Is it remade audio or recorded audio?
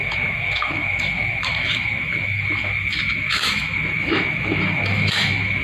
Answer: remade